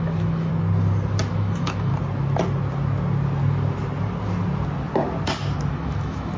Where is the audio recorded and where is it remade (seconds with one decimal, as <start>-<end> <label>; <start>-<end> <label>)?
0.0-0.5 remade; 0.5-1.3 recorded; 1.3-1.9 remade; 1.9-5.7 recorded; 5.7-6.4 remade

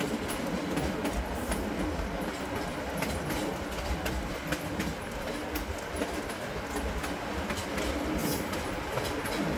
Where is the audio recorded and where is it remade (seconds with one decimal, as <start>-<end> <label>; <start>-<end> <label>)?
0.0-9.6 recorded

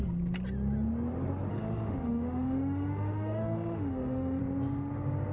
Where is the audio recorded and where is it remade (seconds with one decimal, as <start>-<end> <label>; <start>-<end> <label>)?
0.0-1.5 recorded; 1.5-4.4 remade; 4.4-5.3 recorded

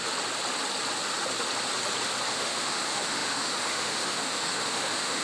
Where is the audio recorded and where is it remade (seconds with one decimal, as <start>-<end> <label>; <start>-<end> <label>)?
0.0-2.3 recorded; 2.3-5.2 remade

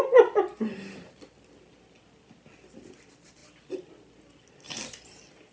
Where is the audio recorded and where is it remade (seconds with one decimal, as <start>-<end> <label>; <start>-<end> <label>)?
0.0-5.5 recorded

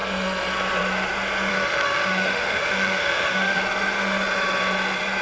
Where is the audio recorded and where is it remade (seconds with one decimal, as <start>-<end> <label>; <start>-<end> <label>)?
0.0-1.5 recorded; 1.5-3.6 remade; 3.6-5.2 recorded

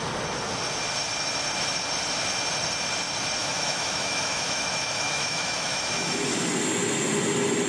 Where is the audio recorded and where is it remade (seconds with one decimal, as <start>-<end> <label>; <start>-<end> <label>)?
0.0-3.4 recorded; 3.4-6.2 remade; 6.2-7.7 recorded